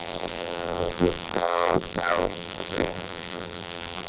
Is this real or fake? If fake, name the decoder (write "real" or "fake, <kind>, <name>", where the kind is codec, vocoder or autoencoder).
fake, vocoder, BigVGAN v2